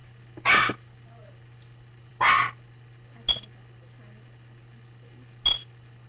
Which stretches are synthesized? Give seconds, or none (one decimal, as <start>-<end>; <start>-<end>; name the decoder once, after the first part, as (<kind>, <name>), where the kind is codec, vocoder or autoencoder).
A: none